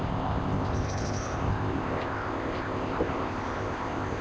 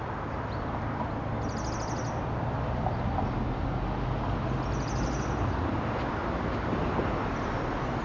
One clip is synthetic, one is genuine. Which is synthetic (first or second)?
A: first